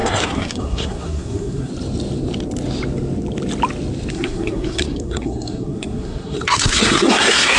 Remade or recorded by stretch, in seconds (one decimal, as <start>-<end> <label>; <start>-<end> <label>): 0.0-1.7 remade; 1.7-4.1 recorded; 4.1-7.6 remade